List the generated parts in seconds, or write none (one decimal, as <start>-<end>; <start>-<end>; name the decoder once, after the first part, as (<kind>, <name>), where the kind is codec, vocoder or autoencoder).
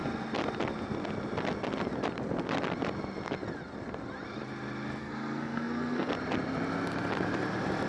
5.0-6.1 (codec, SNAC)